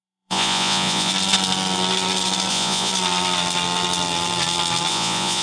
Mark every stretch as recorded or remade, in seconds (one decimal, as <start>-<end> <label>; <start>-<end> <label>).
0.0-1.1 remade; 1.1-2.5 recorded; 2.5-2.9 remade; 2.9-4.9 recorded; 4.9-5.4 remade